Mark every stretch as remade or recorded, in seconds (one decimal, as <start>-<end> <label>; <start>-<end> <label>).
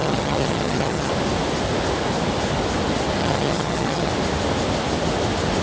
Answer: 0.0-1.1 remade; 1.1-3.2 recorded; 3.2-4.1 remade; 4.1-5.6 recorded